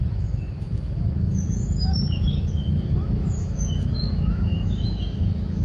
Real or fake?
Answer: fake